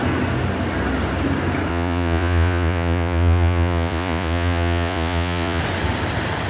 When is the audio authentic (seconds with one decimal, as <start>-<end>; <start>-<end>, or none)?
0.0-1.7; 5.6-6.5